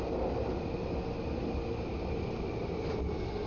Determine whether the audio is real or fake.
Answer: real